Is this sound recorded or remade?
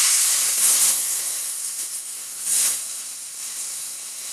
remade